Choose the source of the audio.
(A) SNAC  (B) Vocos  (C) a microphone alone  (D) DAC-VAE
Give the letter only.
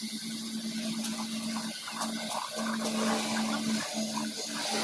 C